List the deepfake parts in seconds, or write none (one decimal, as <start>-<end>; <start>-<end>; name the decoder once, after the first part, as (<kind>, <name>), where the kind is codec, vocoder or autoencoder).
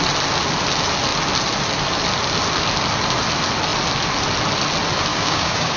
5.1-5.8 (codec, DAC)